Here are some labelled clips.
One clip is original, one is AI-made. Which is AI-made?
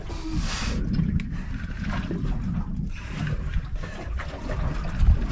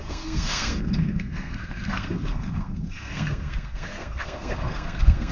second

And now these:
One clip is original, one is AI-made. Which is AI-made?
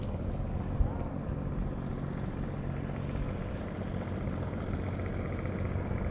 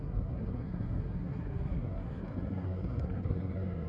second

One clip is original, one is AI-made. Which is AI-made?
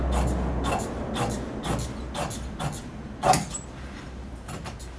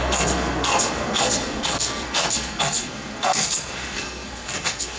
second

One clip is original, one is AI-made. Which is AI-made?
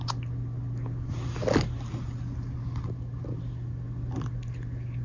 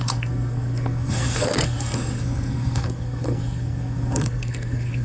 second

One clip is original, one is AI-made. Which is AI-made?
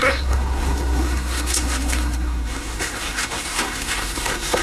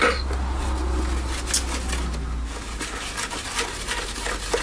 first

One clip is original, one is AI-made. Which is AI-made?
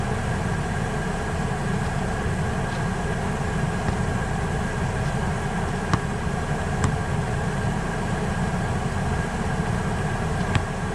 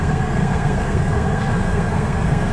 second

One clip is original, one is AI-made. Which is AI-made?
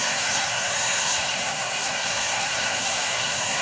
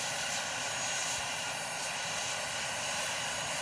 first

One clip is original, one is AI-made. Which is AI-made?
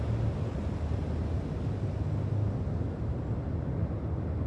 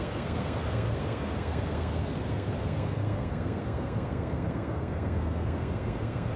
second